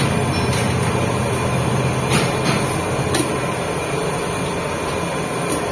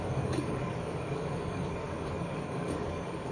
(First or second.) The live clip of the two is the first